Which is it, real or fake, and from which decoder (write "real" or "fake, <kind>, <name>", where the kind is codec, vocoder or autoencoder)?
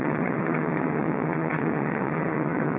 fake, vocoder, WaveNeXt